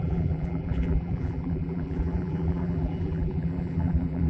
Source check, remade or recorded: remade